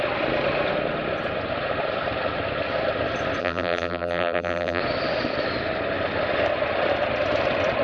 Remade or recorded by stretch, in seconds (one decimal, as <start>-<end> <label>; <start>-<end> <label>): 0.0-3.4 recorded; 3.4-4.8 remade; 4.8-7.8 recorded